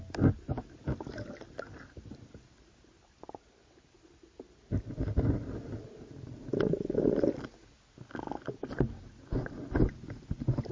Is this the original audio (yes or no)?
yes